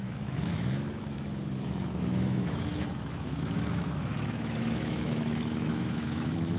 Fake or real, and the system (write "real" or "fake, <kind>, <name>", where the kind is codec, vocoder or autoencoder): fake, autoencoder, DAC-VAE